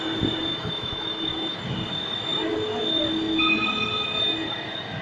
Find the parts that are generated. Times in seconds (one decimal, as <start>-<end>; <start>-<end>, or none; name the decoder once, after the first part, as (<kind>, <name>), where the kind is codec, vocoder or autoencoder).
0.5-1.6 (autoencoder, DAC-VAE)